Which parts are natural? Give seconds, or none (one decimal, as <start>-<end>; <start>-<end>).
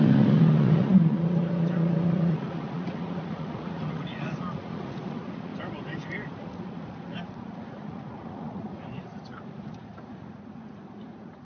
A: 5.5-6.3